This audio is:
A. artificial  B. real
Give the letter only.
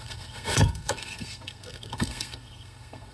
A